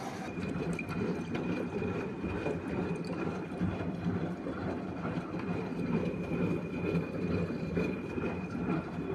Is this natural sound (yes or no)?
no